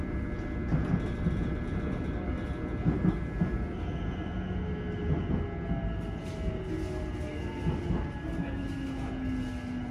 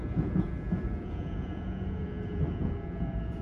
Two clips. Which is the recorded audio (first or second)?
first